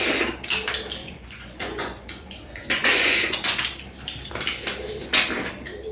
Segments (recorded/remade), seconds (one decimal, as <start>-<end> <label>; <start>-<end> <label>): 0.0-1.0 recorded; 1.0-3.6 remade; 3.6-5.9 recorded